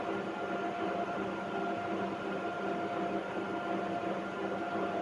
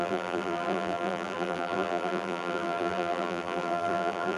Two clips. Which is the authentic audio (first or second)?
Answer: first